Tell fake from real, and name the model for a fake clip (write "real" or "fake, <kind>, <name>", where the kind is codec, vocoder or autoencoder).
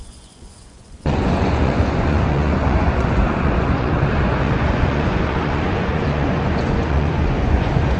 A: fake, vocoder, Vocos